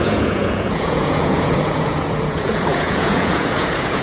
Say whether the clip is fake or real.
fake